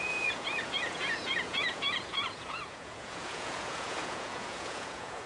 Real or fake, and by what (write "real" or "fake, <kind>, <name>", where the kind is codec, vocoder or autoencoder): fake, vocoder, Vocos